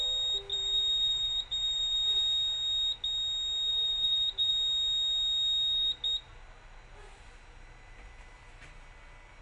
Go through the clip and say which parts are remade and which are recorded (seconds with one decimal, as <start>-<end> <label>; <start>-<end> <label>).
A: 0.0-0.5 recorded; 0.5-2.2 remade; 2.2-3.7 recorded; 3.7-4.5 remade; 4.5-9.4 recorded